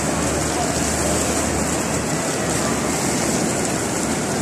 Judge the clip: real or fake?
real